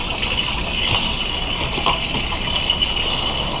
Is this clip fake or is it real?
real